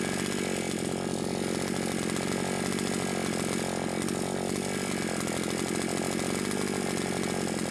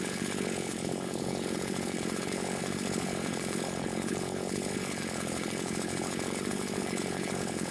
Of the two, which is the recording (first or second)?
first